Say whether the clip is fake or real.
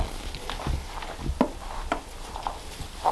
real